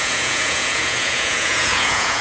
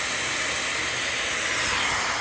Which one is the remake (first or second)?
first